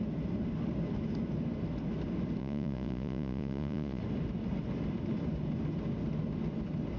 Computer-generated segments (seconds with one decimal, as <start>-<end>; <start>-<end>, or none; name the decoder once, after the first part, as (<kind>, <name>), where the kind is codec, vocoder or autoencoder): 2.4-4.0 (vocoder, Vocos)